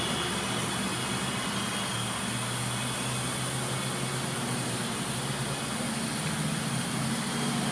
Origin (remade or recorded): recorded